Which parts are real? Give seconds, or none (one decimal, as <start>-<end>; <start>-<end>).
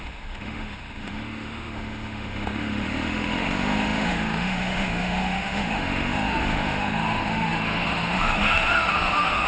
none